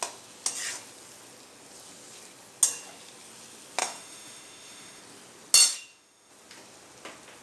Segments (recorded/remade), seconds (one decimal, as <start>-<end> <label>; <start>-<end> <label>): 0.0-3.8 recorded; 3.8-5.0 remade; 5.0-5.7 recorded; 5.7-6.3 remade; 6.3-7.4 recorded